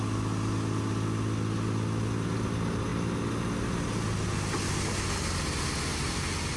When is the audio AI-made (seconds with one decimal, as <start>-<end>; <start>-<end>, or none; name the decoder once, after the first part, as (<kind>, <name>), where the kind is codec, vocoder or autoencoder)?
none